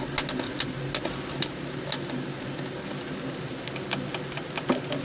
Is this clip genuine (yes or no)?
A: yes